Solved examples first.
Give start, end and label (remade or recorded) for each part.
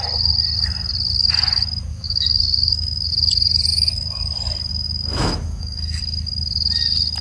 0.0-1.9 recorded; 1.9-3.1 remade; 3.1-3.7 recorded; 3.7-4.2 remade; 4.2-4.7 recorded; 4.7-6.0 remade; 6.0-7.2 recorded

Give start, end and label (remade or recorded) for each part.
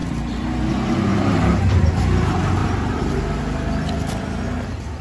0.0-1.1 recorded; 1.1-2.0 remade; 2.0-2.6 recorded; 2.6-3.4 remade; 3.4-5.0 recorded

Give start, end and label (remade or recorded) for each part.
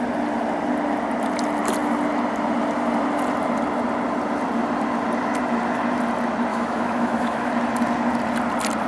0.0-6.5 recorded; 6.5-7.5 remade; 7.5-8.9 recorded